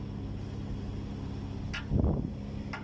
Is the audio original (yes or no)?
yes